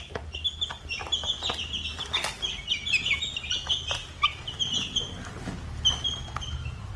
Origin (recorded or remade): recorded